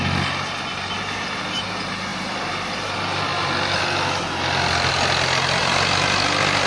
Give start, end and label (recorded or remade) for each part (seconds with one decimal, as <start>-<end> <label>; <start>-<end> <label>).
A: 0.0-6.7 recorded